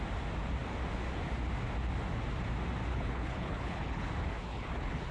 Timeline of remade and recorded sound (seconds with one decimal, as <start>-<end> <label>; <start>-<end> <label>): 0.0-2.9 recorded; 2.9-4.1 remade; 4.1-4.5 recorded; 4.5-5.1 remade